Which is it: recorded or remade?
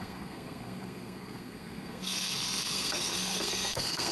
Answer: remade